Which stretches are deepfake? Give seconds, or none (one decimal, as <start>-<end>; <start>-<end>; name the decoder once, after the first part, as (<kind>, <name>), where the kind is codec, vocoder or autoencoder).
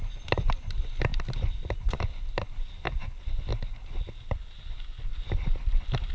none